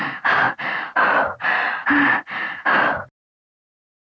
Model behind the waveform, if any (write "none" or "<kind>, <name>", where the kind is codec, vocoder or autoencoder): none